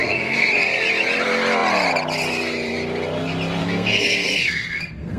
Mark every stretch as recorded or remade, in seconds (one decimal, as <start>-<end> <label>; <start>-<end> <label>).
0.0-0.5 remade; 0.5-3.6 recorded; 3.6-5.2 remade